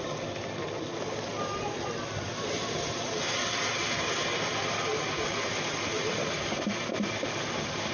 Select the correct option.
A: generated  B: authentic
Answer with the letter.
B